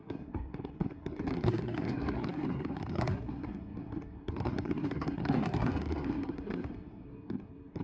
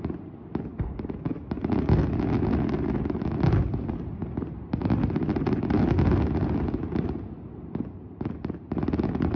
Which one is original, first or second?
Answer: second